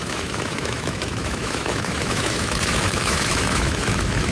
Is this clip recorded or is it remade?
remade